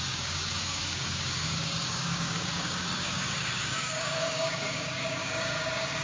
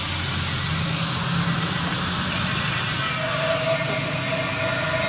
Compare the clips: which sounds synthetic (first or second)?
first